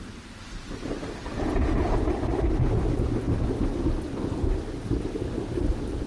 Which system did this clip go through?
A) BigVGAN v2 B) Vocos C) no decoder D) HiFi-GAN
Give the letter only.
C